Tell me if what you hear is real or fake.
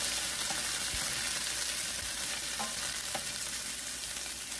real